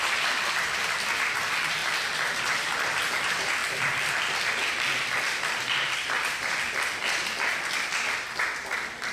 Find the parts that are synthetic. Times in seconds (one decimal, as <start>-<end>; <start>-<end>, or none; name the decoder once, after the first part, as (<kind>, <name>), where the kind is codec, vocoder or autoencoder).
1.8-2.4 (vocoder, BigVGAN v2); 3.6-8.4